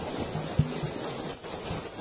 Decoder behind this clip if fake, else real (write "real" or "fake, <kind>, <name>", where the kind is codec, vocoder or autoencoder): real